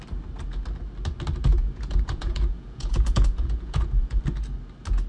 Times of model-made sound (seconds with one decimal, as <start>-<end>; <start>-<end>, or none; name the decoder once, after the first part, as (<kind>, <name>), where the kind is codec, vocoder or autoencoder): 1.5-4.2 (vocoder, Vocos)